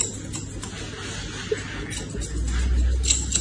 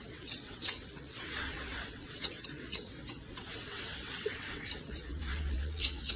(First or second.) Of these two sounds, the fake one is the second